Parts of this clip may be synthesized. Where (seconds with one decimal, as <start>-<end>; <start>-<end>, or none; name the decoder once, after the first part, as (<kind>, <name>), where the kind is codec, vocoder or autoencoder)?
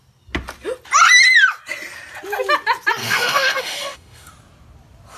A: 3.0-4.3 (autoencoder, DAC-VAE)